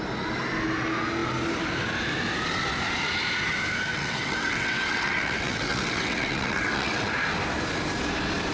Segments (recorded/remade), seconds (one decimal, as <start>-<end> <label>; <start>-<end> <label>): 0.0-3.9 recorded; 3.9-7.1 remade; 7.1-8.5 recorded